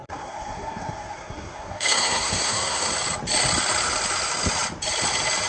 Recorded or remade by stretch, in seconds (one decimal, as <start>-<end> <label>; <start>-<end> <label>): 0.0-2.9 remade; 2.9-5.5 recorded